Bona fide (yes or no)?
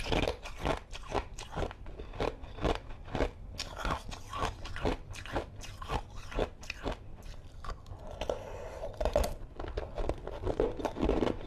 yes